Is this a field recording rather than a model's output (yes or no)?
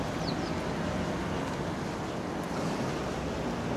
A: yes